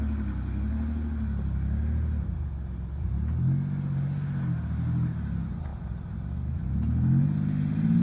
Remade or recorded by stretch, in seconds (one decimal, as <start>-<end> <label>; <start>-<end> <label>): 0.0-5.7 recorded; 5.7-6.8 remade; 6.8-8.0 recorded